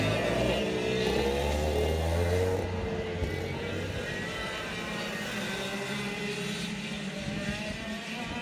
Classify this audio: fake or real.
real